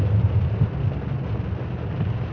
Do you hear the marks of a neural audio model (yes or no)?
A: no